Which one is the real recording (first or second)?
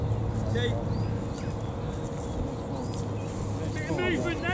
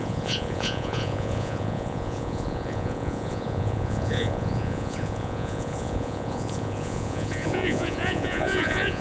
first